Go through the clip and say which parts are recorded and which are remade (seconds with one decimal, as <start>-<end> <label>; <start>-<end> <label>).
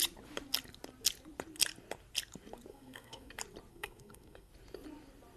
0.0-2.7 recorded; 2.7-3.3 remade; 3.3-3.7 recorded; 3.7-4.5 remade; 4.5-5.4 recorded